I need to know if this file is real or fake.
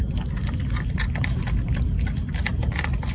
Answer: real